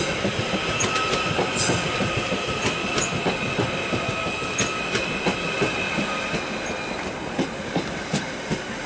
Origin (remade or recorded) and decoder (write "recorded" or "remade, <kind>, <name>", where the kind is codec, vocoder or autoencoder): recorded